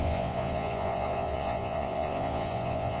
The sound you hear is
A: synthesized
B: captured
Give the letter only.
A